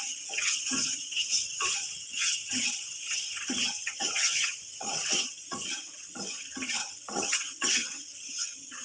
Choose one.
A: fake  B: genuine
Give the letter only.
A